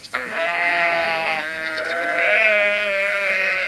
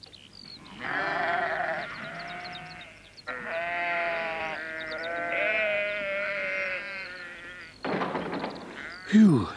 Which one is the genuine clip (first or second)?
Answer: second